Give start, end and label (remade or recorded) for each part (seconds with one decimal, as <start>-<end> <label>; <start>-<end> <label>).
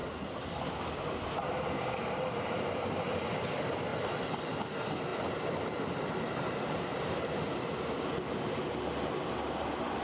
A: 0.0-3.9 recorded; 3.9-4.6 remade; 4.6-6.9 recorded; 6.9-7.7 remade; 7.7-10.0 recorded